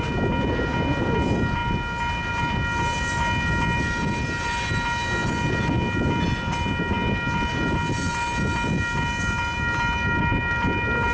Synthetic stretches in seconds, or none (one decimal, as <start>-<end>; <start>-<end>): none